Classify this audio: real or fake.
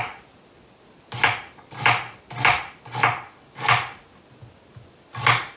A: real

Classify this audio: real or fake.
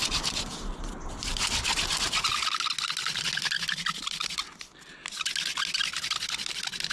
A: real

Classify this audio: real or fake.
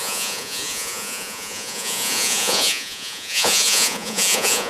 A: fake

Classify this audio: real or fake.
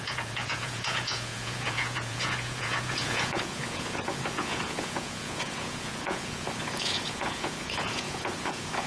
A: fake